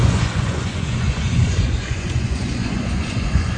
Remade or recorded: remade